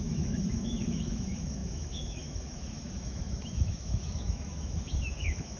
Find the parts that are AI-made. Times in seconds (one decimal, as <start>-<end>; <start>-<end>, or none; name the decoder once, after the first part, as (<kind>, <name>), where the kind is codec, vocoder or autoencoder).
0.0-5.6 (autoencoder, DAC-VAE)